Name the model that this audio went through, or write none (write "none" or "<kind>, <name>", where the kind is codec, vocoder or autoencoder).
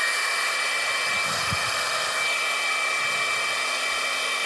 none